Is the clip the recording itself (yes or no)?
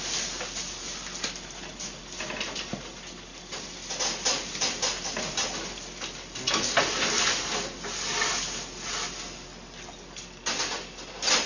yes